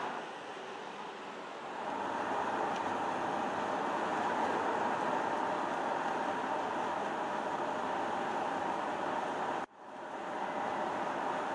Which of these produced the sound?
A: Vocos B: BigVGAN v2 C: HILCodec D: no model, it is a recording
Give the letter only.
D